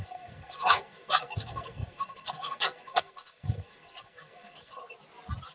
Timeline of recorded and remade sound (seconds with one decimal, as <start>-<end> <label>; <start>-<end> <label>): 0.0-4.8 remade; 4.8-5.5 recorded